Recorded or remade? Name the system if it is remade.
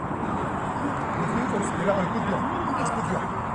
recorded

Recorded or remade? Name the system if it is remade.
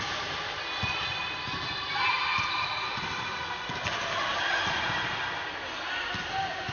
recorded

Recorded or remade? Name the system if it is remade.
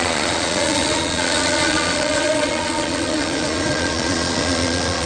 remade, vocoder, Vocos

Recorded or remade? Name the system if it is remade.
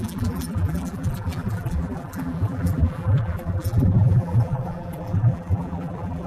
remade, vocoder, BigVGAN v2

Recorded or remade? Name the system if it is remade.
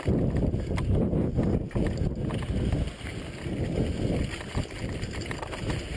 recorded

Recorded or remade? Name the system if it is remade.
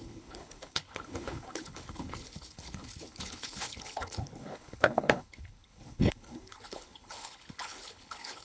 remade, codec, HILCodec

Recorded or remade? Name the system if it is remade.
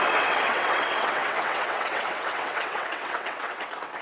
remade, vocoder, WaveNeXt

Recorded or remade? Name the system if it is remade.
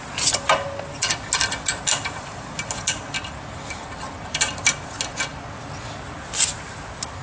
recorded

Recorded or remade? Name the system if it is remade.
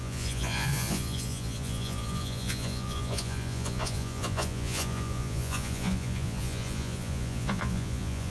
remade, vocoder, Vocos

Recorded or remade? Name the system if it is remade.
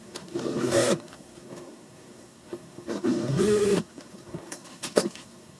remade, codec, SNAC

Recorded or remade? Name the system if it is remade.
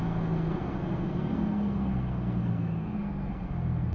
remade, codec, SNAC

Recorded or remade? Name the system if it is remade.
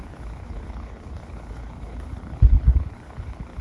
remade, codec, HILCodec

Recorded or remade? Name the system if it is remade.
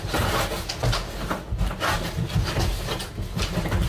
recorded